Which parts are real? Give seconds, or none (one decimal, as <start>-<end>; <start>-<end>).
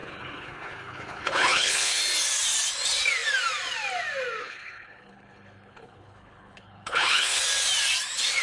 2.0-4.4; 7.4-8.4